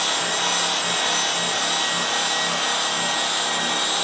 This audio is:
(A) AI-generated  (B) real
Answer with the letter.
B